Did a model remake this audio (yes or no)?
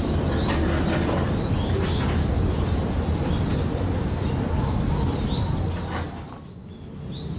no